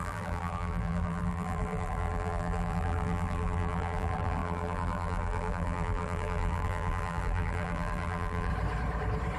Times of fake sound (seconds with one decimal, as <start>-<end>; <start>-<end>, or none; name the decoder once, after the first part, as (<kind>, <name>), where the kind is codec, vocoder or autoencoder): 0.0-8.5 (vocoder, BigVGAN v2)